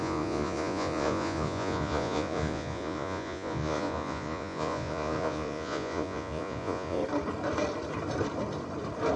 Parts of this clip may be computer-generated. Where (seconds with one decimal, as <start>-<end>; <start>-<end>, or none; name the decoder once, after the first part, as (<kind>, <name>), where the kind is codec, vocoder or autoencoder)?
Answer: 0.0-7.0 (vocoder, Vocos)